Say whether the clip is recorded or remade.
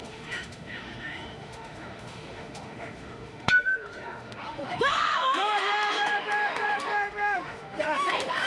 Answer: remade